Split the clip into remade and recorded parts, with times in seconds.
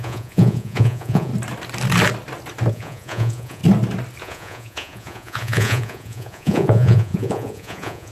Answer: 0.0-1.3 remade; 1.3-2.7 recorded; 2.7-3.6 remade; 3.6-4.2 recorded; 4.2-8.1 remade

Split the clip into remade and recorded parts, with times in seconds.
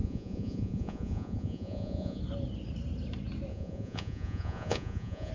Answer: 0.0-2.2 remade; 2.2-3.5 recorded; 3.5-5.3 remade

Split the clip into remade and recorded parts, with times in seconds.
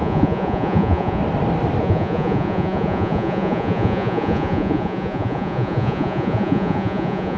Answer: 0.0-1.2 remade; 1.2-1.8 recorded; 1.8-7.4 remade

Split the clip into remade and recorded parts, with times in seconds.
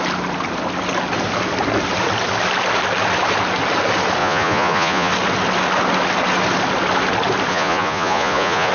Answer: 0.0-4.2 recorded; 4.2-5.1 remade; 5.1-7.5 recorded; 7.5-8.7 remade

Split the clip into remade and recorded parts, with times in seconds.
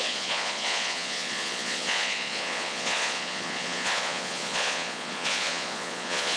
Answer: 0.0-6.4 remade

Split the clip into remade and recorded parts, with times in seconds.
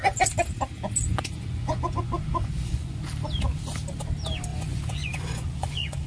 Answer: 0.0-1.1 recorded; 1.1-3.0 remade; 3.0-4.5 recorded; 4.5-6.1 remade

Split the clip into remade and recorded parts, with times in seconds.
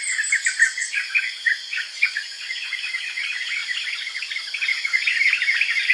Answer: 0.0-0.8 recorded; 0.8-2.8 remade; 2.8-4.7 recorded; 4.7-5.2 remade; 5.2-5.9 recorded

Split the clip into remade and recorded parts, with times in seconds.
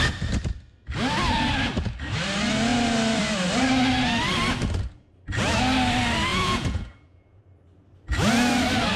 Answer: 0.0-6.3 recorded; 6.3-7.4 remade; 7.4-9.0 recorded